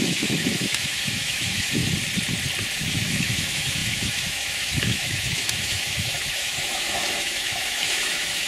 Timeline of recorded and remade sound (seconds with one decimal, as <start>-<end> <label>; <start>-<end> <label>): 0.0-1.8 remade; 1.8-2.7 recorded; 2.7-8.5 remade